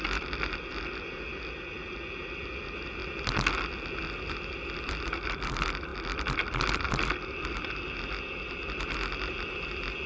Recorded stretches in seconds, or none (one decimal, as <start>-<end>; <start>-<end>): 3.0-4.3; 5.9-6.7

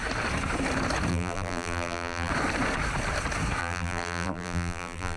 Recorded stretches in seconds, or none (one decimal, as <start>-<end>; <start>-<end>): 0.0-1.1; 2.3-3.6